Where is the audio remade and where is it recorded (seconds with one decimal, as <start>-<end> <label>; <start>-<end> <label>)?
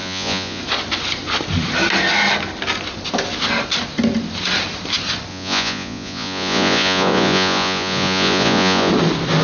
0.0-0.6 remade; 0.6-5.3 recorded; 5.3-8.9 remade; 8.9-9.4 recorded